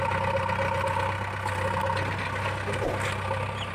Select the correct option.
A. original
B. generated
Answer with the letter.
A